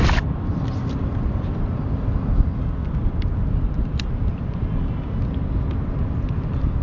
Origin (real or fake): real